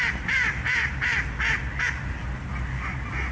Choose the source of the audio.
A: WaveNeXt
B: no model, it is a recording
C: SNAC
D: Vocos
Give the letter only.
B